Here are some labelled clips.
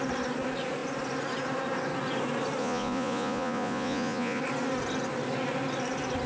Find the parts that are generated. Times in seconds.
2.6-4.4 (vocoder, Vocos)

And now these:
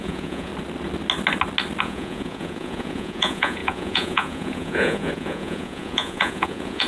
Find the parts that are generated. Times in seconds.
0.0-0.5 (vocoder, Vocos); 1.8-6.9

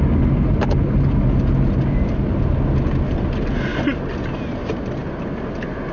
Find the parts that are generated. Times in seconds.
none

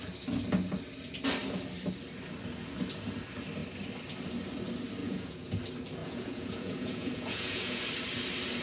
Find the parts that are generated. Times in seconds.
5.0-5.6 (vocoder, Vocos); 6.0-7.8

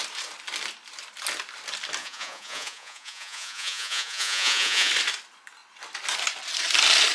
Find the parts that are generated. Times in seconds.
2.0-4.9 (vocoder, Vocos)

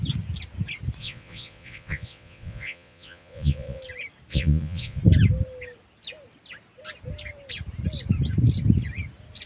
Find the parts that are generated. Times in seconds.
1.0-3.8 (vocoder, Vocos); 4.3-5.0

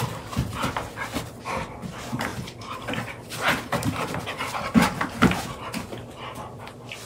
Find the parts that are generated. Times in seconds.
none